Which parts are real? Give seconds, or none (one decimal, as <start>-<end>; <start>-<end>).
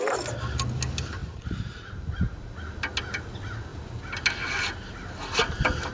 0.0-1.2; 1.9-5.9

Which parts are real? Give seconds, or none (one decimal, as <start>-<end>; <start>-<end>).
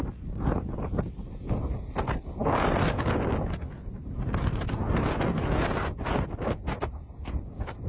0.0-7.9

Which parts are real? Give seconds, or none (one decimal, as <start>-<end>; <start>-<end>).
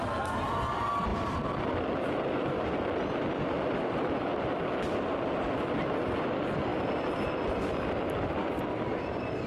0.0-9.5